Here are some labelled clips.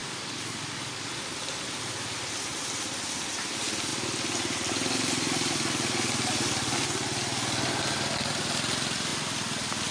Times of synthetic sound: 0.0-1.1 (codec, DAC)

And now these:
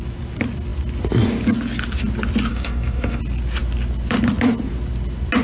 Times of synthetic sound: 2.5-3.2 (codec, DAC)

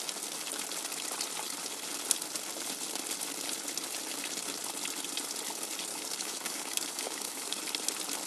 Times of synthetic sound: 5.9-7.6 (codec, DAC)

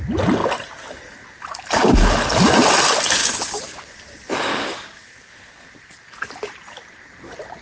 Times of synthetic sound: 3.2-3.9 (codec, DAC); 4.5-5.1

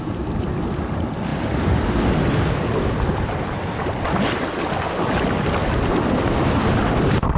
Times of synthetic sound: none

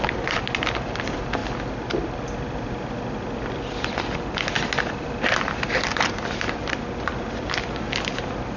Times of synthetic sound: none

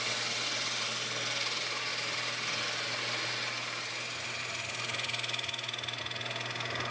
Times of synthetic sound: none

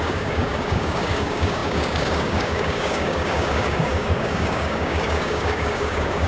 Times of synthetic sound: 0.0-6.3 (codec, DAC)